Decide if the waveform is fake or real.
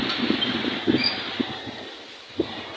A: real